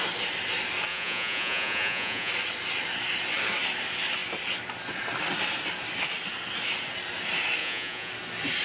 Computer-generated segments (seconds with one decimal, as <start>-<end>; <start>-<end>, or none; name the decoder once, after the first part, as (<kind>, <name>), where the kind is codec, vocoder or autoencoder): 0.9-2.3 (vocoder, Vocos); 7.6-8.1